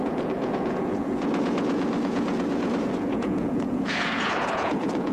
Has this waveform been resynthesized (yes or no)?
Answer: yes